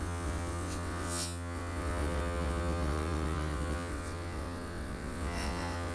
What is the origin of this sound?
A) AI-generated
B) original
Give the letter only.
A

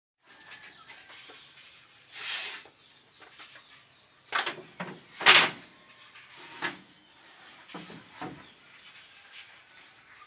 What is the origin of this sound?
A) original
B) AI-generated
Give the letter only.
A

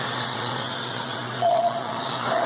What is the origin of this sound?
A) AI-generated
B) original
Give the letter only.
A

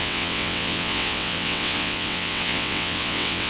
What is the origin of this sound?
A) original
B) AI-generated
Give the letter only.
B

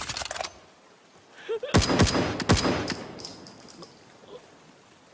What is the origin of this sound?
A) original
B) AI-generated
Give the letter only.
A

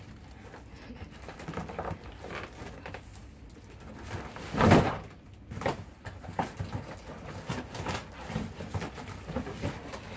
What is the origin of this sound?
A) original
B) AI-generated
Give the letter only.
A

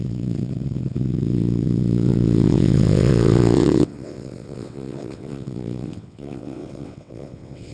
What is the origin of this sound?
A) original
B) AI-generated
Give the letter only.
B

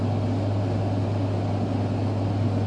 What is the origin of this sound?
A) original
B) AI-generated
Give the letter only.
A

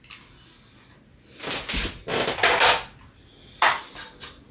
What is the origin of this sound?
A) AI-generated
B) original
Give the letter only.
B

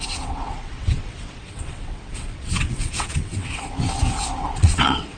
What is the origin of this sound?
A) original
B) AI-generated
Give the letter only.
B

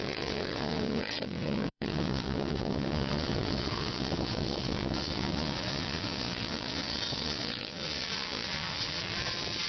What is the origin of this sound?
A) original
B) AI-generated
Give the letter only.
B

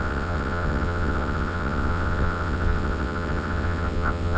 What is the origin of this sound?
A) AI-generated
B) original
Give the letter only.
A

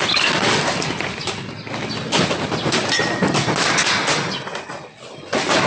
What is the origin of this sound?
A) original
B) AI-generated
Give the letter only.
A